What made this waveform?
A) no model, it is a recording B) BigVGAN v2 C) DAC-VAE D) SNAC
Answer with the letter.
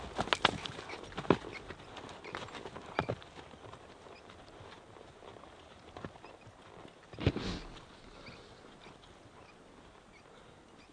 A